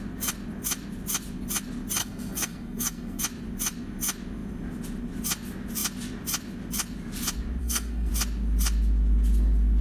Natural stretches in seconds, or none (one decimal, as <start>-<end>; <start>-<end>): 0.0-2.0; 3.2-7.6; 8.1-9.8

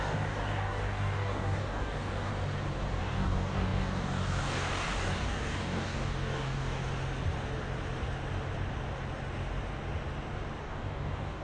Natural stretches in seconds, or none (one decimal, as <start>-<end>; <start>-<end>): 2.3-3.0; 6.8-10.6

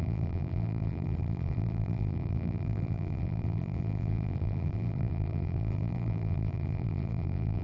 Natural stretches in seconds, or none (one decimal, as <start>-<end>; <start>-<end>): none